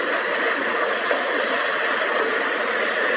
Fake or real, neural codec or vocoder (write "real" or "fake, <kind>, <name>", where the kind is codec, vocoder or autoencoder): fake, vocoder, Vocos